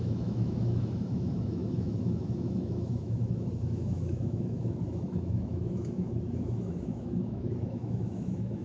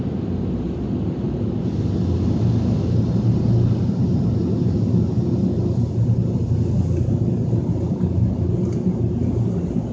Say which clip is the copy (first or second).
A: first